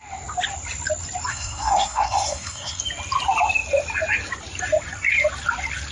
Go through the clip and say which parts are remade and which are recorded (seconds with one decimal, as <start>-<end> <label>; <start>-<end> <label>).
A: 0.0-1.3 recorded; 1.3-2.8 remade; 2.8-5.9 recorded